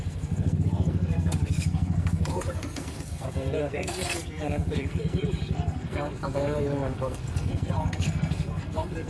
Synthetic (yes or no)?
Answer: yes